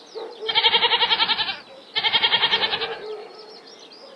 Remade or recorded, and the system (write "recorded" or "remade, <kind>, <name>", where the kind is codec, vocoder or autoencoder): recorded